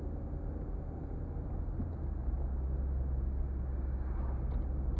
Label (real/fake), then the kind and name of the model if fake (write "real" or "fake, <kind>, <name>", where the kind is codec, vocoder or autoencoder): real